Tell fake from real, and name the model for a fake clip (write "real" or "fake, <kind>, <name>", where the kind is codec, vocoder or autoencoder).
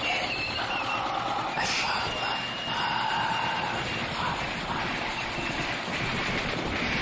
real